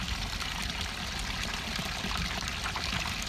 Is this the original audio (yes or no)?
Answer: yes